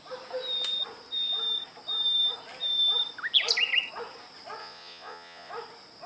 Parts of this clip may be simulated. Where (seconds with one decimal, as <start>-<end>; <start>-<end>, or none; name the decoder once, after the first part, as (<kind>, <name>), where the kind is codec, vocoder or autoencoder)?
4.6-5.5 (vocoder, Vocos)

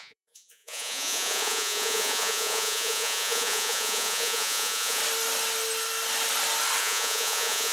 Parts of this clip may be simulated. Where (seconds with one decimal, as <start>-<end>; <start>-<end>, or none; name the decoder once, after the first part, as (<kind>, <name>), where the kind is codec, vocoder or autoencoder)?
0.0-5.0 (vocoder, Vocos); 6.8-7.7

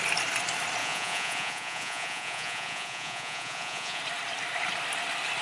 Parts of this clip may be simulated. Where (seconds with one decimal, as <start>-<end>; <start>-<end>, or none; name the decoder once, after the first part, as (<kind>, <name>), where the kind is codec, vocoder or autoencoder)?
0.8-4.0 (vocoder, Vocos)

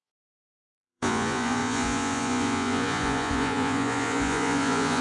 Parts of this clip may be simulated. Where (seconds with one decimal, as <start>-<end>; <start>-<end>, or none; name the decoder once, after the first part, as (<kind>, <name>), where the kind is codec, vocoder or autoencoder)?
0.0-5.0 (vocoder, Vocos)

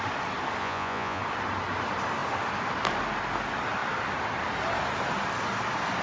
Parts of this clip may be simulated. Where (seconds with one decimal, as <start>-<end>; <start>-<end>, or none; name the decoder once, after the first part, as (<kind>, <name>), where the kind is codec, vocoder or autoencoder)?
0.6-1.2 (vocoder, Vocos)